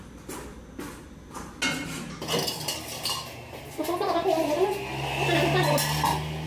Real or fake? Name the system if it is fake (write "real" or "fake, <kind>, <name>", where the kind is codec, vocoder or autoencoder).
real